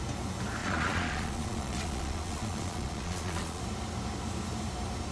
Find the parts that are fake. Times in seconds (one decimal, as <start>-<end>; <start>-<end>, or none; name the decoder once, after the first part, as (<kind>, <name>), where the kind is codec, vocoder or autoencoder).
0.6-3.6 (vocoder, Vocos)